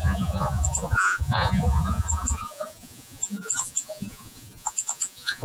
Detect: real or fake fake